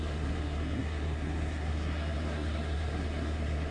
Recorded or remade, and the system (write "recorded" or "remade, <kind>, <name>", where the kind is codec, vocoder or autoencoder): remade, codec, SNAC